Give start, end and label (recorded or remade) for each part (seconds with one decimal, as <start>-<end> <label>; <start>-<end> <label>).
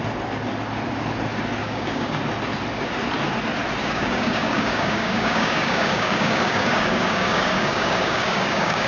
0.0-1.6 recorded; 1.6-2.2 remade; 2.2-3.8 recorded; 3.8-8.9 remade